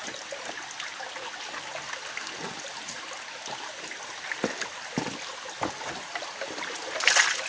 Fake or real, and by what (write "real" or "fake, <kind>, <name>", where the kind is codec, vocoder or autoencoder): real